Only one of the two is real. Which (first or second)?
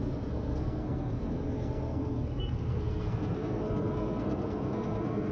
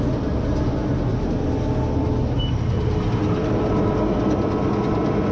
second